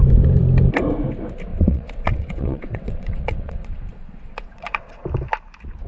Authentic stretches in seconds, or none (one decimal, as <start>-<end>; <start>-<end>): 0.0-1.5; 5.0-5.9